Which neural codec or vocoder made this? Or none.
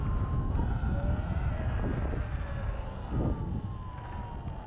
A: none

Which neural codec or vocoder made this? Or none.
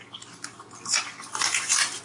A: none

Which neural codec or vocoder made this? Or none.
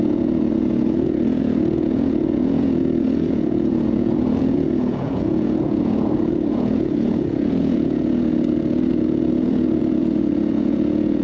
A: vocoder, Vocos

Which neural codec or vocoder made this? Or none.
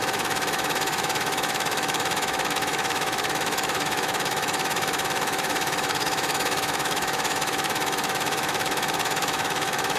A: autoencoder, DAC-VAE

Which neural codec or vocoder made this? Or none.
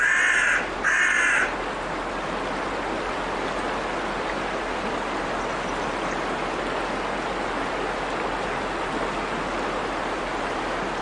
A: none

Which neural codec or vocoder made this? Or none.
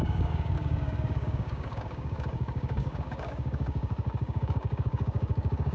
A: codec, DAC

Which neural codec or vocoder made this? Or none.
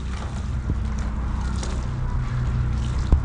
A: none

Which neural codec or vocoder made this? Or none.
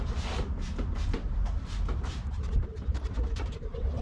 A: vocoder, BigVGAN v2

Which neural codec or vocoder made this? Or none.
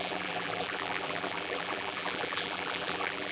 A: vocoder, BigVGAN v2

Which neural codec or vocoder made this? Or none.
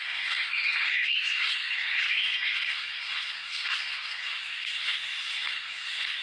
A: codec, SNAC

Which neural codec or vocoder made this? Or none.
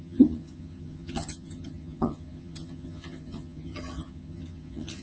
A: vocoder, HiFi-GAN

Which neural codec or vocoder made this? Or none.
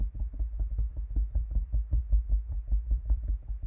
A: vocoder, BigVGAN v2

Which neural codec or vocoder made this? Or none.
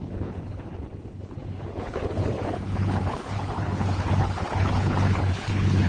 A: codec, HILCodec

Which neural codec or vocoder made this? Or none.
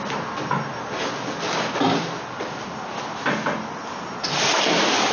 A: none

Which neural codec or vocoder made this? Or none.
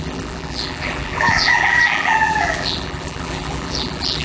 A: vocoder, BigVGAN v2